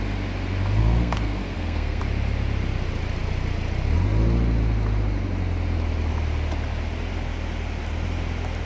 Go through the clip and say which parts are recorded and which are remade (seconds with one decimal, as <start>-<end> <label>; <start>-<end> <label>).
0.0-0.8 recorded; 0.8-2.0 remade; 2.0-8.7 recorded